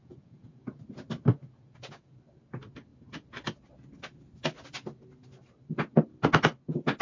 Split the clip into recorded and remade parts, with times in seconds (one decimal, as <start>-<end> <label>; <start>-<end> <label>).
0.0-0.8 remade; 0.8-1.3 recorded; 1.3-2.2 remade; 2.2-7.0 recorded